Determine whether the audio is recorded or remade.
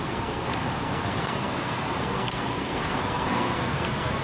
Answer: remade